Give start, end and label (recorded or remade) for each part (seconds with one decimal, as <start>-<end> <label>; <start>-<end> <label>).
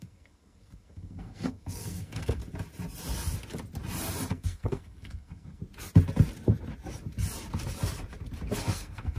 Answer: 0.0-2.4 remade; 2.4-4.3 recorded; 4.3-5.6 remade; 5.6-8.5 recorded; 8.5-9.2 remade